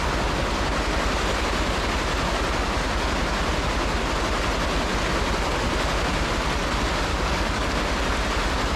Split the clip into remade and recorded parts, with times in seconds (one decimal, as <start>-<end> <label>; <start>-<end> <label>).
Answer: 0.0-7.1 recorded; 7.1-7.7 remade; 7.7-8.8 recorded